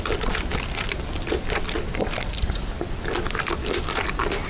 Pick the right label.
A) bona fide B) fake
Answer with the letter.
A